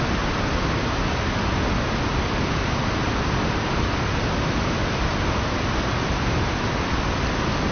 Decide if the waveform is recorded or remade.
recorded